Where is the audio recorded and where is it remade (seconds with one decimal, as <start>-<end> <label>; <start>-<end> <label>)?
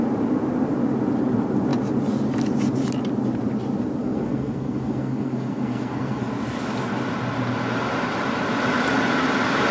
0.0-4.0 recorded; 4.0-6.3 remade; 6.3-9.7 recorded